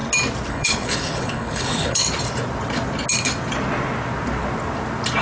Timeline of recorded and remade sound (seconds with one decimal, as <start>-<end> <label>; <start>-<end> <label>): 0.0-0.5 recorded; 0.5-2.0 remade; 2.0-5.2 recorded